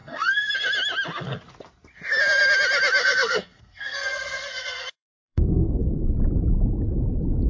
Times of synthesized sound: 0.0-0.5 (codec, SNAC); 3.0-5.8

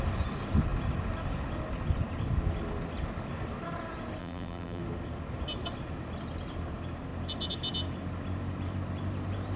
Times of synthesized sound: 4.2-4.8 (vocoder, BigVGAN v2)

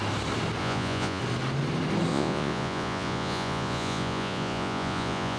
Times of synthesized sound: 0.6-1.2 (vocoder, Vocos); 2.1-5.4